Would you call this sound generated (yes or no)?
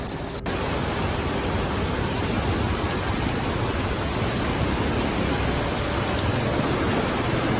no